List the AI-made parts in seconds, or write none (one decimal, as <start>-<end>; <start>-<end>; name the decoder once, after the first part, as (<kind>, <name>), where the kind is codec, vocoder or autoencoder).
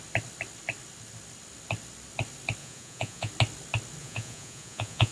2.6-3.3 (vocoder, Vocos); 4.0-5.1